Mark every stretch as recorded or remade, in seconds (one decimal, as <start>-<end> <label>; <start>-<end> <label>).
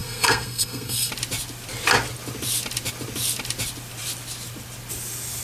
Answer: 0.0-1.1 remade; 1.1-5.4 recorded